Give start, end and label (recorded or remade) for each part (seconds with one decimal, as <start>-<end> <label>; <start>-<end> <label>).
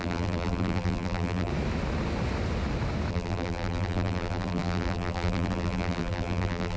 0.0-1.5 remade; 1.5-3.1 recorded; 3.1-6.8 remade